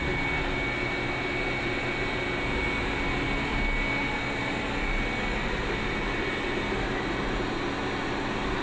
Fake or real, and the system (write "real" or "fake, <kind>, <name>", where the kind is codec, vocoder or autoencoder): real